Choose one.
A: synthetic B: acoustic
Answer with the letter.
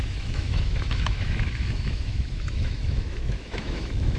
A